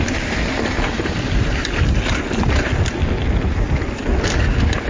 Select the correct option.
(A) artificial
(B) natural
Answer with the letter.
B